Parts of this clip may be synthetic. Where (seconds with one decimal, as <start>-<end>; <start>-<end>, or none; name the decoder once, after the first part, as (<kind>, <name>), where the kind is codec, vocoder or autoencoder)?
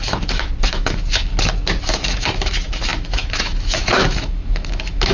0.0-1.3 (autoencoder, DAC-VAE); 1.8-5.1